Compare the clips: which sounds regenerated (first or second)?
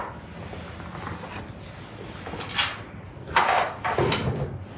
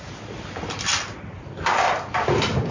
second